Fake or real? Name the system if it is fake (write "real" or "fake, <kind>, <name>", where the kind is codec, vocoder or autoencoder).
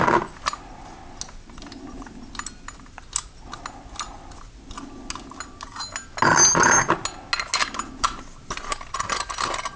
real